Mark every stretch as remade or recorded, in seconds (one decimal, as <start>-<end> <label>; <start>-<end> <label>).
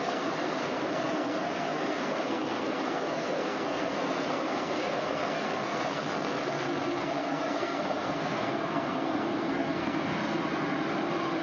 0.0-10.1 remade; 10.1-11.4 recorded